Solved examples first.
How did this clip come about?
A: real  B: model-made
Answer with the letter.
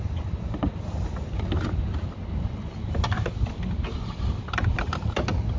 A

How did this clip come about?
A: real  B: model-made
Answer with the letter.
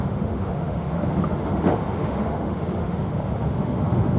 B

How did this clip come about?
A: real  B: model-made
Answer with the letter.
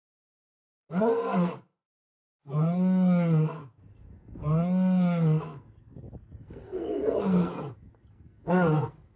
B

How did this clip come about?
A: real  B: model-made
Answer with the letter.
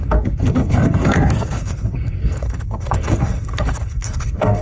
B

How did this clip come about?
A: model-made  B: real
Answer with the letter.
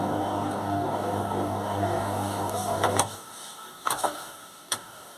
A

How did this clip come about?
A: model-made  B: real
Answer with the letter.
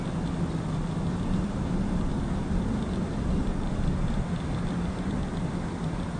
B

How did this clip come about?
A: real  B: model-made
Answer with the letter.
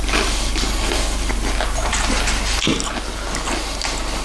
A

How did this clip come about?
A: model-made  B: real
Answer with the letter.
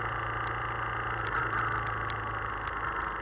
B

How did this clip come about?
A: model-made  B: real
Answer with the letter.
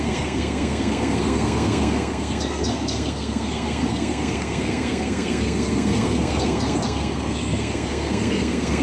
A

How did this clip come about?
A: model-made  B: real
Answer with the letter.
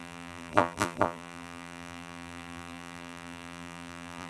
A